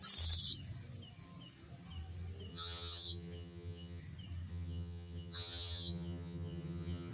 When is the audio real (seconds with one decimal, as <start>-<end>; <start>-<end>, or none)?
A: 0.0-2.5; 4.0-4.5